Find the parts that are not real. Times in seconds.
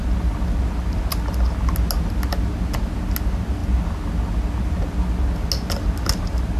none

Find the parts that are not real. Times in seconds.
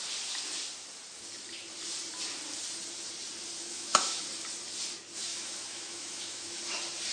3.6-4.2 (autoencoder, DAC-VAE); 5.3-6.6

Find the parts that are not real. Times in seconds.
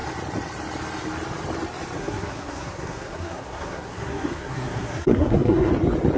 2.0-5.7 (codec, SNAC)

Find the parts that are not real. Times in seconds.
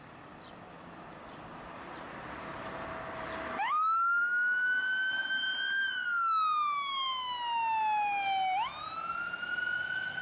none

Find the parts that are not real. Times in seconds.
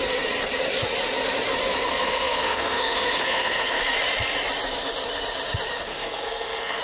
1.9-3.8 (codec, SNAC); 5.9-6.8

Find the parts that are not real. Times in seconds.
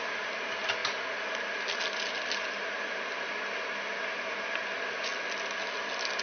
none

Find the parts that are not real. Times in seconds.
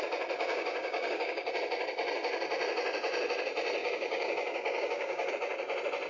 0.5-1.5 (codec, DAC); 3.8-5.3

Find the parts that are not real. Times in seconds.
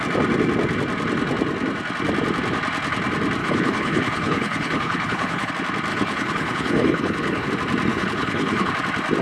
3.4-5.5 (codec, HILCodec); 5.9-7.5; 7.9-8.7